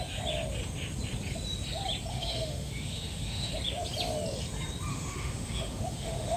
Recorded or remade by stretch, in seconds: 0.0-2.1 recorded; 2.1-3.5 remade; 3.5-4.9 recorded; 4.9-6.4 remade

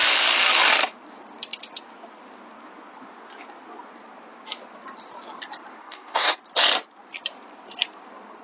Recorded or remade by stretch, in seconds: 0.0-5.8 recorded; 5.8-6.3 remade; 6.3-8.4 recorded

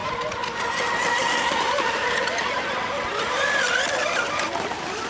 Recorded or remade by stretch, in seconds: 0.0-5.1 recorded

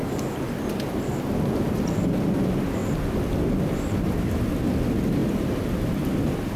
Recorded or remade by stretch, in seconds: 0.0-1.2 remade; 1.2-2.8 recorded; 2.8-4.5 remade; 4.5-5.2 recorded; 5.2-6.1 remade; 6.1-6.6 recorded